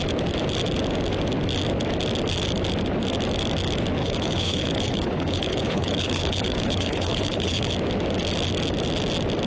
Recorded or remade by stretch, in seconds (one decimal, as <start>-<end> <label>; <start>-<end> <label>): 0.0-4.0 recorded; 4.0-7.7 remade; 7.7-9.5 recorded